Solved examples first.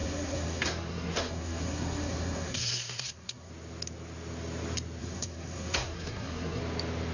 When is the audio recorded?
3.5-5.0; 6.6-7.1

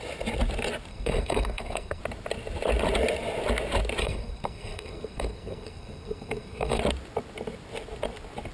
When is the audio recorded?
0.0-0.9; 2.0-4.0; 6.8-8.5

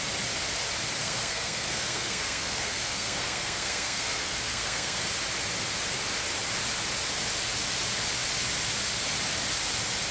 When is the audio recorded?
0.0-1.0; 5.0-10.1

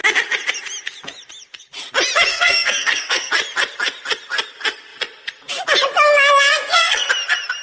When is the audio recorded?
0.0-2.3; 3.3-6.5; 7.1-7.6

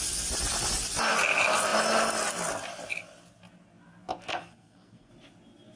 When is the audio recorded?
0.0-4.3; 5.1-5.8

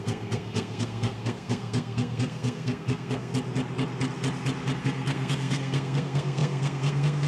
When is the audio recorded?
3.3-4.8

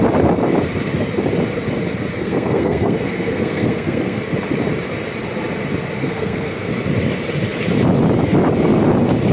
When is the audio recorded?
0.0-2.1; 4.2-6.0; 6.7-9.3

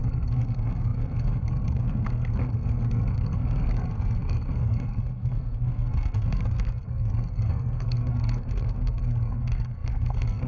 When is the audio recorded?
none